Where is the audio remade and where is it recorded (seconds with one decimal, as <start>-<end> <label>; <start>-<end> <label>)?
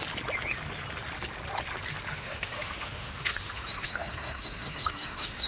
0.0-2.1 recorded; 2.1-5.5 remade